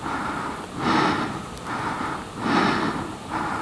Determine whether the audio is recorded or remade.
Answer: recorded